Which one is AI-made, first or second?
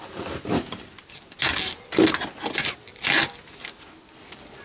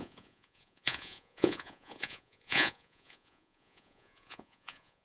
second